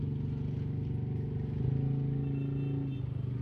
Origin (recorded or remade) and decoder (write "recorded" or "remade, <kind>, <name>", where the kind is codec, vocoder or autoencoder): recorded